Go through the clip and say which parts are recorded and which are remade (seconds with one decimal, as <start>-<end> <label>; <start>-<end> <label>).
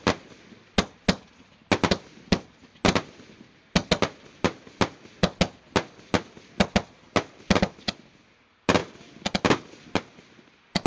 0.0-10.9 recorded